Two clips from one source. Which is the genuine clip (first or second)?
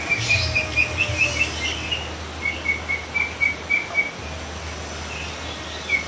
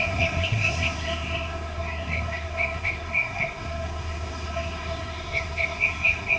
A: first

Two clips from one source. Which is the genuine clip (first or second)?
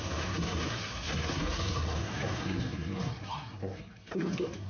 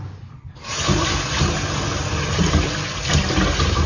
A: second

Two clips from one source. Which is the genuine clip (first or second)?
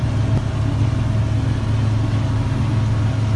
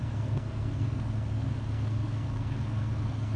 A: first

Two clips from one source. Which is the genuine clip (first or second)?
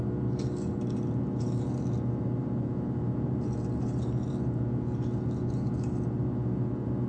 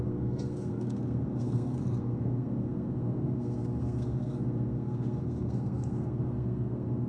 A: first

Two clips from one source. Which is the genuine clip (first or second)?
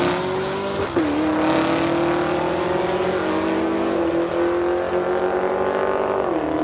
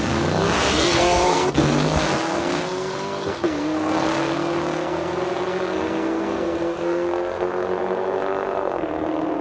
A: first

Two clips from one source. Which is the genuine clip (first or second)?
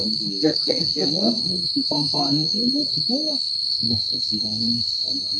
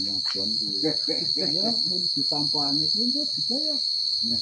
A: second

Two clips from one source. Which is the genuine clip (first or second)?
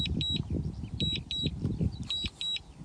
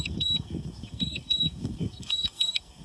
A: first